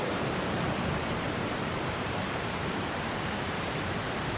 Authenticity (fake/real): fake